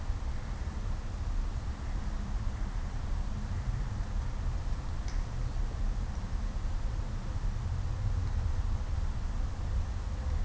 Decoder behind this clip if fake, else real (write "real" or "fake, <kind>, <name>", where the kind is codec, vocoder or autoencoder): real